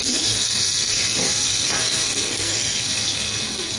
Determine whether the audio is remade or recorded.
remade